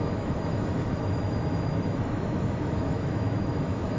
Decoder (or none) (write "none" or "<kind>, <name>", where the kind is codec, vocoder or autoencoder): autoencoder, DAC-VAE